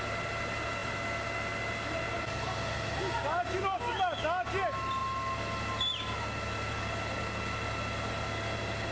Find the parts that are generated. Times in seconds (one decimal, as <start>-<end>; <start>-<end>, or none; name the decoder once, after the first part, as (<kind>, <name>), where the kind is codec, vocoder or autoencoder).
none